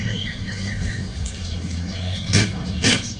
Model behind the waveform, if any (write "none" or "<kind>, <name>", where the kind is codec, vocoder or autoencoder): codec, SNAC